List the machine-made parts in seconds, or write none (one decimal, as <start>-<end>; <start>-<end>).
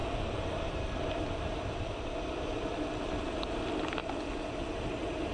0.0-3.2